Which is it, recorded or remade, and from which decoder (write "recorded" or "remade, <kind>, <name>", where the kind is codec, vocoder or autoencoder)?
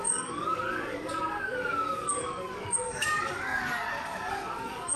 remade, codec, DAC